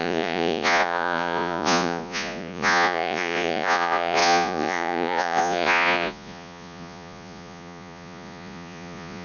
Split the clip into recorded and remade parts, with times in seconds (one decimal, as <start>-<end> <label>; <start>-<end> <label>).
0.0-9.2 remade